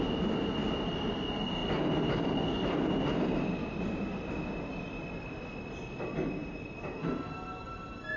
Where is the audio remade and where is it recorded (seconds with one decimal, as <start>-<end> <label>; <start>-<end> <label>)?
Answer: 0.0-8.2 recorded